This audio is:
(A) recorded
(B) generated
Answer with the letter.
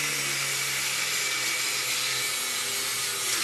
A